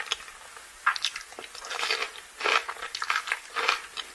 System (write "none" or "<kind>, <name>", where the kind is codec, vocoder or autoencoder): none